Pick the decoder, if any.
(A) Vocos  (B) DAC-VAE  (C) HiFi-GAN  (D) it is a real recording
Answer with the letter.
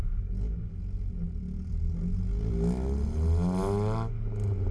D